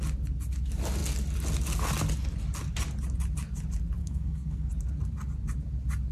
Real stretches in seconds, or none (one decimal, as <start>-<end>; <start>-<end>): 0.0-4.0; 4.7-6.1